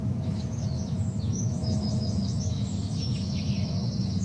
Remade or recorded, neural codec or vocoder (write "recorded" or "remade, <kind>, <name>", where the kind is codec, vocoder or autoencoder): remade, autoencoder, DAC-VAE